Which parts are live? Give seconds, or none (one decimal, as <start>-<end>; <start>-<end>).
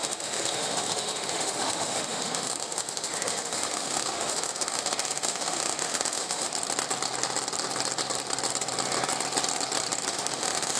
6.5-10.1